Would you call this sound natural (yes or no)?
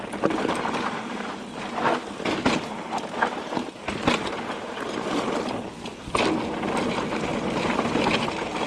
yes